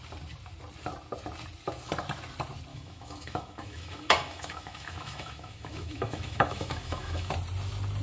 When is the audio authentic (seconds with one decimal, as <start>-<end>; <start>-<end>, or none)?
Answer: 0.0-2.7; 7.3-8.0